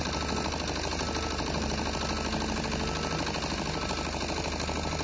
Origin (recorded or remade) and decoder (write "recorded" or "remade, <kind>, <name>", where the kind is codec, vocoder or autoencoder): recorded